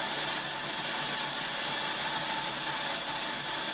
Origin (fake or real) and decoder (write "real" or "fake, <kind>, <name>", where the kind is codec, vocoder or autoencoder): real